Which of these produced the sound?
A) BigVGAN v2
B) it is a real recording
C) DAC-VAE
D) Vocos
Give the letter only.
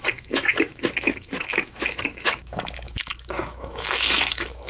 C